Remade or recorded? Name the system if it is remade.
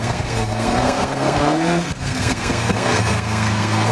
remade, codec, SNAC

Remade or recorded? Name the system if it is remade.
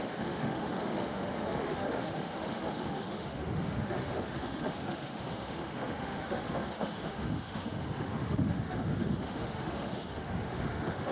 remade, autoencoder, DAC-VAE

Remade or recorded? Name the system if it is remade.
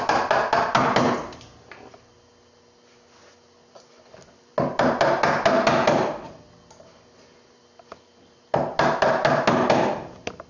recorded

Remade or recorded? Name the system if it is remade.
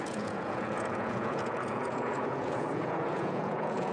remade, vocoder, Vocos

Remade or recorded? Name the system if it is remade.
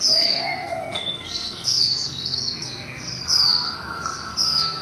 remade, codec, SNAC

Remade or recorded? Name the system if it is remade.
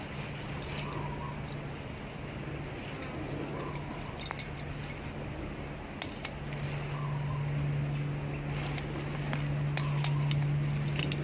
recorded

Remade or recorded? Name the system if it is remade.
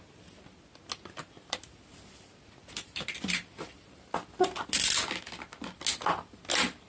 recorded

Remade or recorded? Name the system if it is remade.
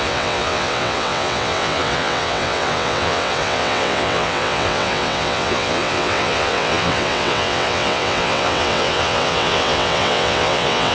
remade, vocoder, WaveNeXt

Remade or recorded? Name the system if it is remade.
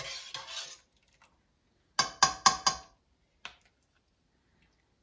recorded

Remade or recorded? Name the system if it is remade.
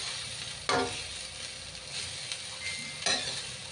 recorded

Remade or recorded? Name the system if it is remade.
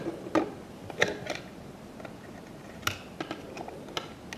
recorded